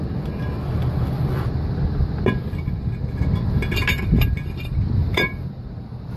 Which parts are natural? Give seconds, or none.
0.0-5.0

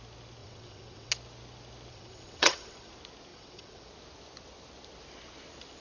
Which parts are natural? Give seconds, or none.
0.0-0.4; 1.1-1.9; 2.9-3.3; 3.9-5.8

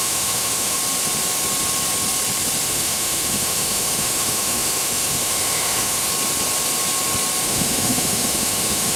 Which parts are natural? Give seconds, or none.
0.8-2.7; 6.1-7.4

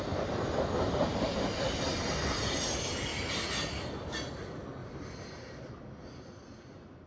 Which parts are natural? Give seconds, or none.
0.0-7.1

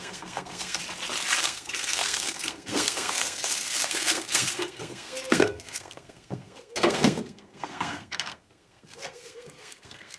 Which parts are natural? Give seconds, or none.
0.8-1.4